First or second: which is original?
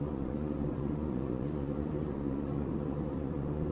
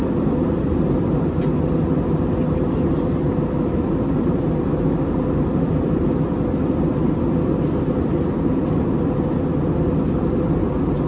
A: second